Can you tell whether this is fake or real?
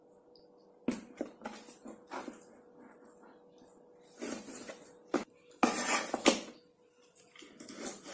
real